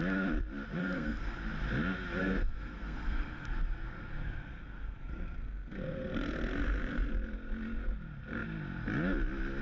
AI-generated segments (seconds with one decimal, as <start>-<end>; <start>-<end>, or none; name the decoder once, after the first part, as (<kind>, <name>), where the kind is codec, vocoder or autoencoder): 0.8-1.4 (codec, SNAC); 2.2-7.1